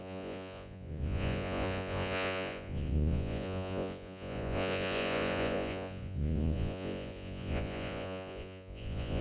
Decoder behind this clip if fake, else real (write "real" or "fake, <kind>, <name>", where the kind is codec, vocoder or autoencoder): fake, vocoder, Vocos